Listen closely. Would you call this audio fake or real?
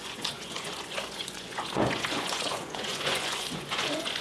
fake